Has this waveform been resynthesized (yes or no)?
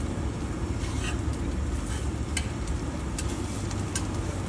no